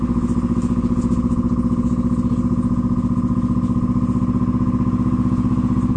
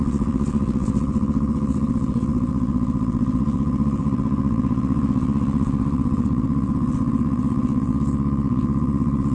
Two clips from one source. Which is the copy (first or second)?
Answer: second